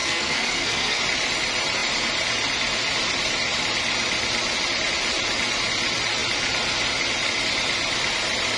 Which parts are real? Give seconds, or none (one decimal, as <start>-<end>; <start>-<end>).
1.0-8.6